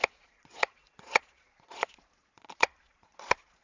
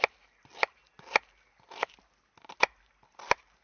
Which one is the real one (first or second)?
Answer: second